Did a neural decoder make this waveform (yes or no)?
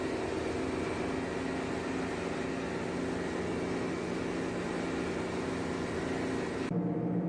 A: no